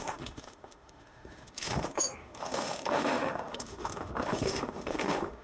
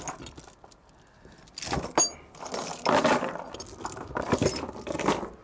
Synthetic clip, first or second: first